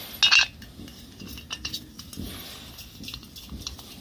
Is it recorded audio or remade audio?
recorded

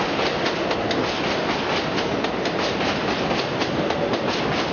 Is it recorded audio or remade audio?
recorded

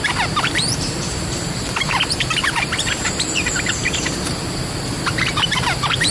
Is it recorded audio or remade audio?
remade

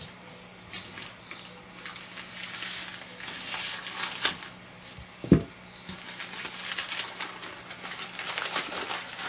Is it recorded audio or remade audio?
recorded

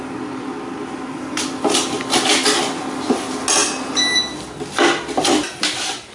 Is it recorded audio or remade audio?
recorded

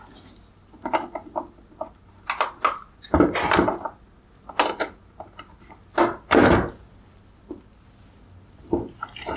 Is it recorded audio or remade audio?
recorded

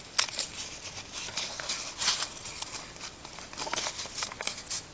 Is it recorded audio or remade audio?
recorded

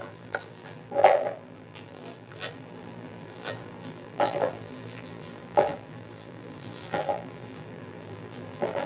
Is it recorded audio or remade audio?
remade